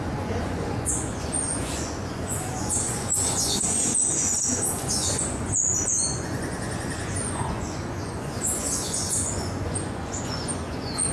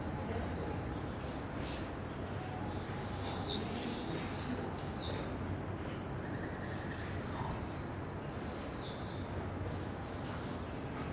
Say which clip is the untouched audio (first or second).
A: second